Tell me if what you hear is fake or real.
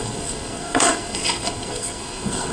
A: fake